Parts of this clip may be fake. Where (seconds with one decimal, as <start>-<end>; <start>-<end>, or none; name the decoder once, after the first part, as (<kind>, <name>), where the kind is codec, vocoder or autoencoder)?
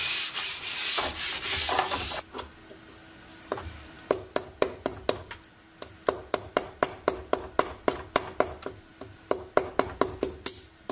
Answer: 3.3-4.0 (vocoder, BigVGAN v2)